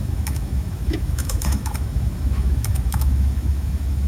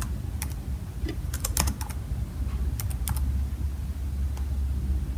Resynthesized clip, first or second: first